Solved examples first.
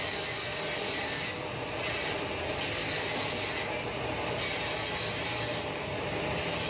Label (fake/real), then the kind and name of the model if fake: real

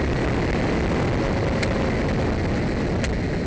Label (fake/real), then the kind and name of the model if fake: real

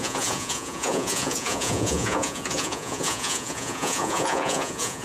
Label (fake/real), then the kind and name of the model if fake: fake, vocoder, Vocos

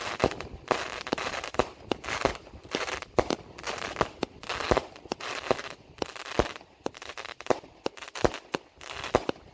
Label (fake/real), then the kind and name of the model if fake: real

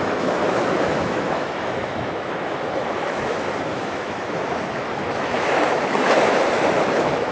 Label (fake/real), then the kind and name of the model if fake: fake, autoencoder, DAC-VAE